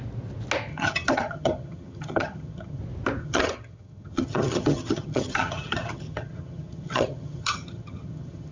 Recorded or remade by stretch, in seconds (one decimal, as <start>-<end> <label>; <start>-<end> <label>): 0.0-0.7 recorded; 0.7-2.8 remade; 2.8-3.2 recorded; 3.2-8.5 remade